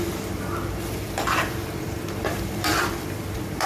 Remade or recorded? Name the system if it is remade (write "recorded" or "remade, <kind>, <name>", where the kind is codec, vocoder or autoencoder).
remade, vocoder, BigVGAN v2